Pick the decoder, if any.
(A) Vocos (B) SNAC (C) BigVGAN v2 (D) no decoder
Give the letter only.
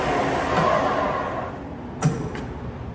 D